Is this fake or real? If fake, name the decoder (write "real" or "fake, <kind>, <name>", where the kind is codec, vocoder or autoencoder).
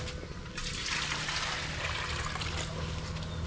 real